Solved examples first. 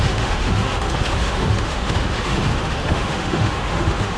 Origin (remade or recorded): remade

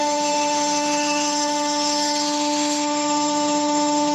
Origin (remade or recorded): remade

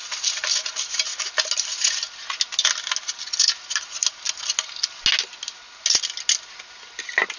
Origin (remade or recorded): recorded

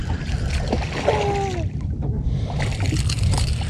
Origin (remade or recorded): recorded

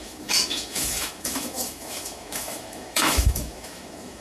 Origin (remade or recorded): remade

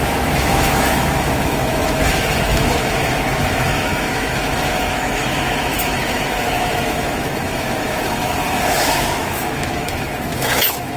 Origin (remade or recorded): remade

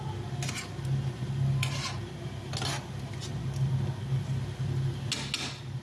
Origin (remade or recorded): recorded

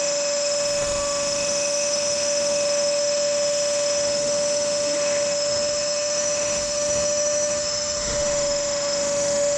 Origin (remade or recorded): remade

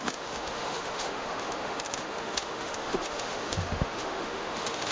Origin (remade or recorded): remade